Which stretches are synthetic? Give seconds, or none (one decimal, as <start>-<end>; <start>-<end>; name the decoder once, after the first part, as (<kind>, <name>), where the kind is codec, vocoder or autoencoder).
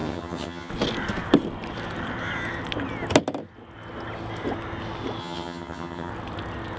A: 0.0-0.7 (vocoder, HiFi-GAN); 5.2-6.1